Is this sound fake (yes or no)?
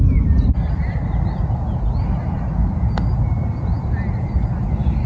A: no